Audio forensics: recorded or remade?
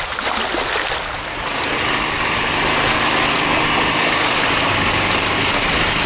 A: recorded